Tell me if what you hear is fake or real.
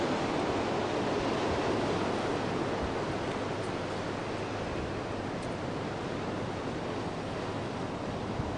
real